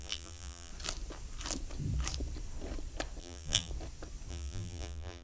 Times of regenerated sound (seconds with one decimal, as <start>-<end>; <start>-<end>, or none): 0.0-0.7; 3.2-3.7; 4.3-5.2